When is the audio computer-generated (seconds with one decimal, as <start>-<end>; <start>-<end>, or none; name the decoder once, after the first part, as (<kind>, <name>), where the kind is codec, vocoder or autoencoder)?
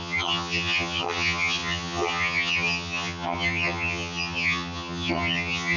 0.0-5.8 (vocoder, HiFi-GAN)